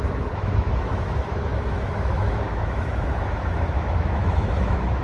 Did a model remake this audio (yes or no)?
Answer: yes